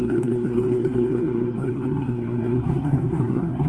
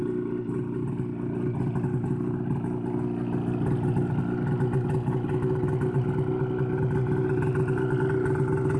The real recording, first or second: second